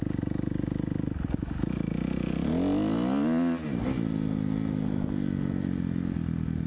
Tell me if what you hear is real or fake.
real